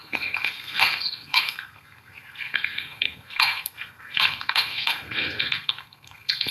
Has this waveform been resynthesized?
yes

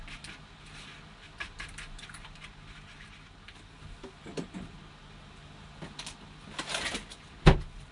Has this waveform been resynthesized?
no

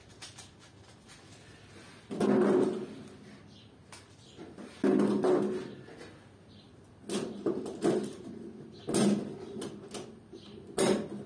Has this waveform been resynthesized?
no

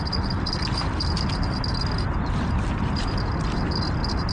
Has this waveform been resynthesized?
no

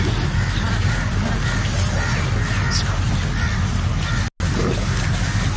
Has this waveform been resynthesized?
no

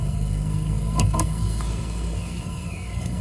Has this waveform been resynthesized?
yes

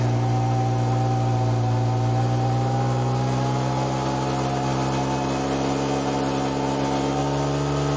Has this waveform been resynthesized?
no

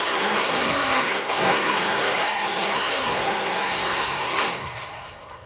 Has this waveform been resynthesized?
yes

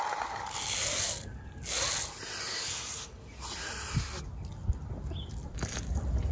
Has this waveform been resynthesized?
no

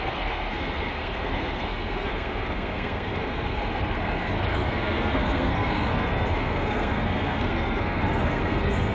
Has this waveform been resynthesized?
yes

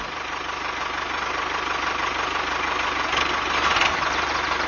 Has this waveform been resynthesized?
no